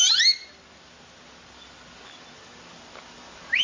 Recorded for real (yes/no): yes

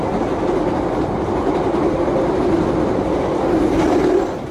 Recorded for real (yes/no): yes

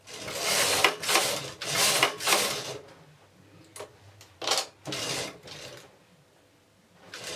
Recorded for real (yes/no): yes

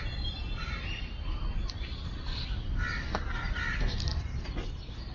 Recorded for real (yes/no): yes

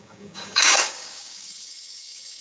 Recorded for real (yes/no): no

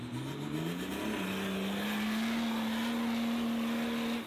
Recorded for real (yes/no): yes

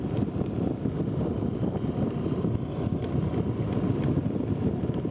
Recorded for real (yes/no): yes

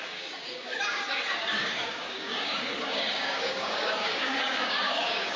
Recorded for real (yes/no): no